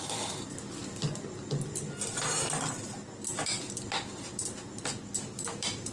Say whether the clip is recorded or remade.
recorded